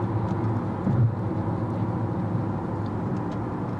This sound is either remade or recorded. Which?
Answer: recorded